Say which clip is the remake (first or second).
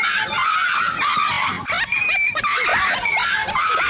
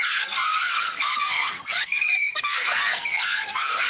second